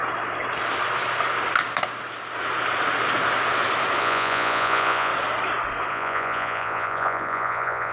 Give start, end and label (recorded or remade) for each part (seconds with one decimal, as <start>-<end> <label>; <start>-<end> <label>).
0.0-4.0 recorded; 4.0-5.1 remade; 5.1-5.9 recorded; 5.9-7.9 remade